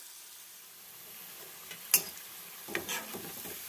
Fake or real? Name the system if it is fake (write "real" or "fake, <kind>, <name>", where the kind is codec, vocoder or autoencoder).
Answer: real